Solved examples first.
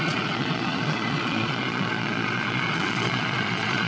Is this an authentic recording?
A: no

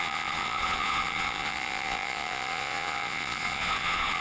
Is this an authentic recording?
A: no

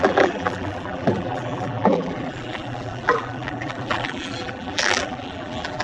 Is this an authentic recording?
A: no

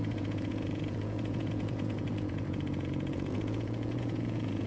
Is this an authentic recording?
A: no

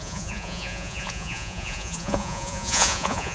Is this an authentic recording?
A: no